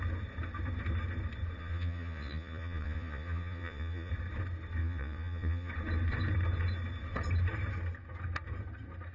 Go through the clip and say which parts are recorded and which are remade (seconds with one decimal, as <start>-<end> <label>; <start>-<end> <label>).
0.0-1.6 recorded; 1.6-4.1 remade; 4.1-4.8 recorded; 4.8-5.7 remade; 5.7-9.1 recorded